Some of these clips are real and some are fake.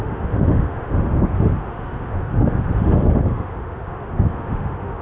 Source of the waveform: fake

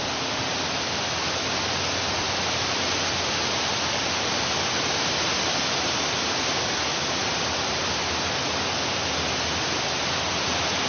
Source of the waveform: real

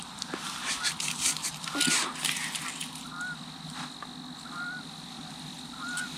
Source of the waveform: real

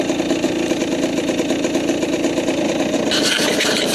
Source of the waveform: real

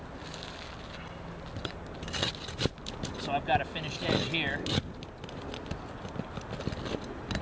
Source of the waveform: real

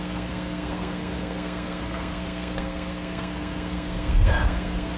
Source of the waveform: fake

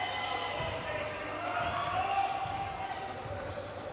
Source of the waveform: real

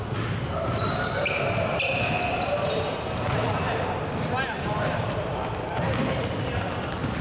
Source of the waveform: real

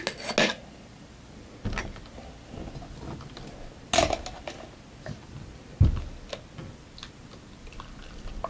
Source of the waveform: real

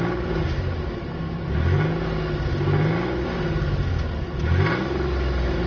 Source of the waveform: real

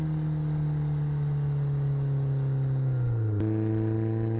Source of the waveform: real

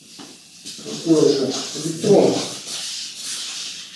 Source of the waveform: real